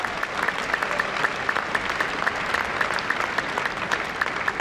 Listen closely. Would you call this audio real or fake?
real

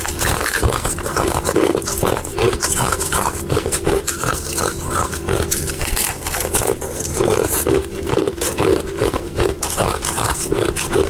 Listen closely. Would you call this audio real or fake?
fake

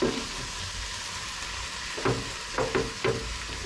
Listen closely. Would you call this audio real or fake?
real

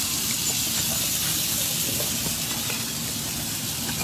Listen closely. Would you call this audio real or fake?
real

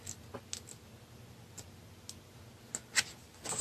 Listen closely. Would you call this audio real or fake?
real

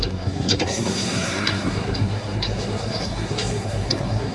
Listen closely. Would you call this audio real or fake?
fake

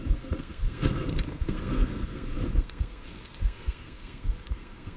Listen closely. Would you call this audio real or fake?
fake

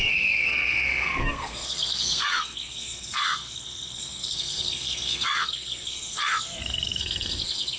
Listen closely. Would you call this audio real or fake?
fake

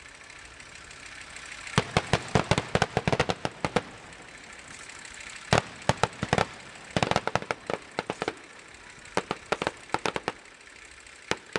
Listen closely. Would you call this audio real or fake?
real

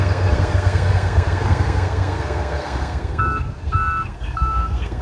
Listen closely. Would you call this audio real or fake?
fake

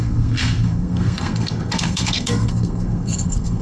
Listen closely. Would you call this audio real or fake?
fake